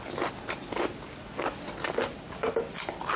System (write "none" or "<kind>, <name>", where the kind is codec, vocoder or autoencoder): none